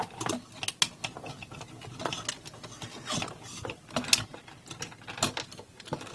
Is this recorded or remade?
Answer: recorded